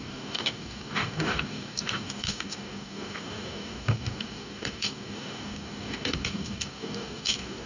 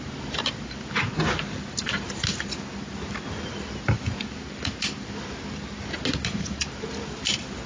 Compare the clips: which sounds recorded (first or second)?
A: second